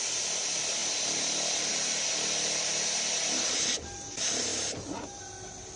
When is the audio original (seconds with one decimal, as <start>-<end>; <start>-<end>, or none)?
0.0-5.8